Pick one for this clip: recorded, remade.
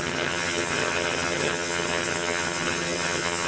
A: remade